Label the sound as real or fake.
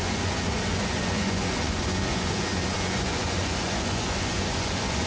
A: fake